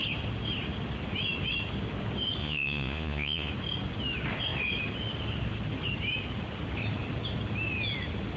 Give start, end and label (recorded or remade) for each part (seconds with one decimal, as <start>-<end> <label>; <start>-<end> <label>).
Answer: 0.0-2.4 recorded; 2.4-3.5 remade; 3.5-8.4 recorded